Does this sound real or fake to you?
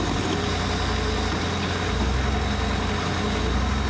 real